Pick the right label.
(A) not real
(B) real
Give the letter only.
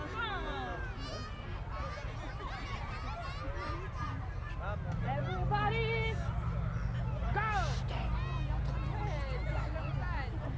B